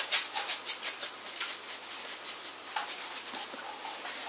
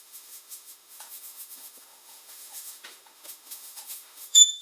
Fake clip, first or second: second